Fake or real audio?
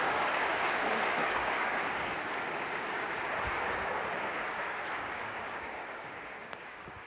fake